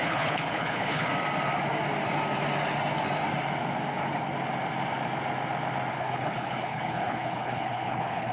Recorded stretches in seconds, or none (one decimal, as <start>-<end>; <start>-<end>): 1.1-5.9